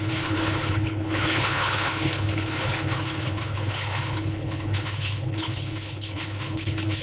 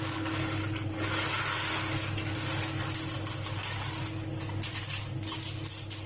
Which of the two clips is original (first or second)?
second